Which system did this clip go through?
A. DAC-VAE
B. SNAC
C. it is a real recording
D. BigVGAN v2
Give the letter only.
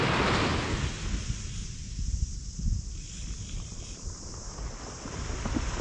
C